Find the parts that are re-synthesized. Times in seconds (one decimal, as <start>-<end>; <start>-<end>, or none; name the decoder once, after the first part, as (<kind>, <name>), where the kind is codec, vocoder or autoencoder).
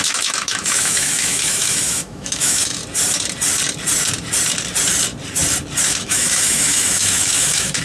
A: 0.0-2.8 (autoencoder, DAC-VAE); 5.8-7.8